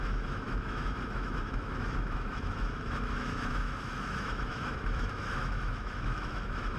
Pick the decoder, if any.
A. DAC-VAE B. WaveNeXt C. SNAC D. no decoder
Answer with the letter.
A